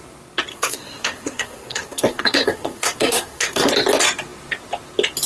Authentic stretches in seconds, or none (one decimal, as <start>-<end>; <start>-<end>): 0.0-0.5; 3.7-5.3